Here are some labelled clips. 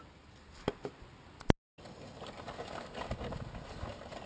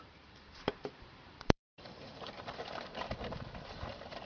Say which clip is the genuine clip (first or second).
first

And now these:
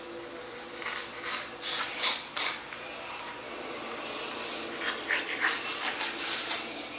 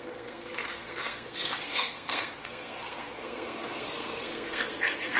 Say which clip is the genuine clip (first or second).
first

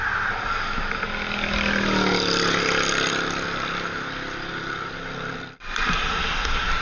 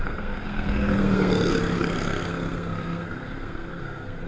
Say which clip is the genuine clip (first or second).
first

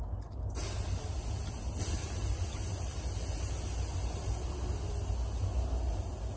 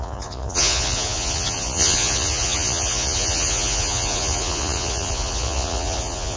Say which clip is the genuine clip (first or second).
first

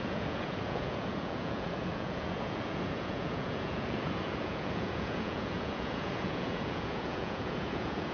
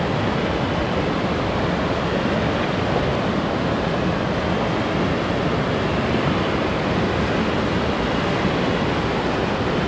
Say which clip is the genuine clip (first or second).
second